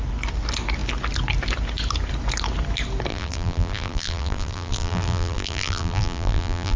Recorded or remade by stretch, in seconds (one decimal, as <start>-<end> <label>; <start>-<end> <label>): 0.0-3.1 recorded; 3.1-6.8 remade